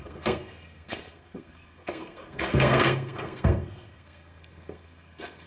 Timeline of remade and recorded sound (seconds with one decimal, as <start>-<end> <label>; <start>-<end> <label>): 0.0-5.5 remade